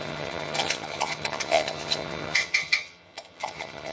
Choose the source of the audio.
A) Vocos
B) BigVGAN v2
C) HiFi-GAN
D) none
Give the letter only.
C